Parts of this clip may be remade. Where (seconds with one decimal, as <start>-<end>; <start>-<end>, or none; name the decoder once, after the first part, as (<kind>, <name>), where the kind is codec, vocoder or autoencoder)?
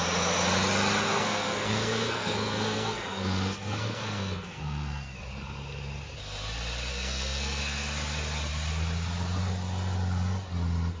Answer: 1.1-5.2 (codec, SNAC); 6.9-7.6